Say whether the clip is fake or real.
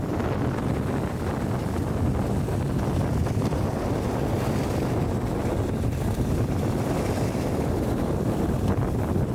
real